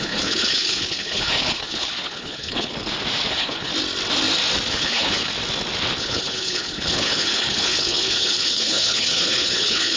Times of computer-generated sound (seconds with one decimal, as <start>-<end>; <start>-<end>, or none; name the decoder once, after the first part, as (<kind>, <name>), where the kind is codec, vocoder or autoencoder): 0.0-2.7 (codec, HILCodec); 3.3-3.7; 4.7-5.3; 6.0-10.0